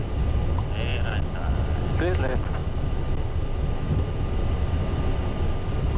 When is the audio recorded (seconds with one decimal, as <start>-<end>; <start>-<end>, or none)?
0.0-6.0